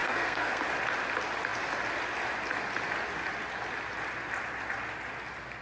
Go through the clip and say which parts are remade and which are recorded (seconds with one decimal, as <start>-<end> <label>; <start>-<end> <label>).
0.0-0.6 remade; 0.6-5.6 recorded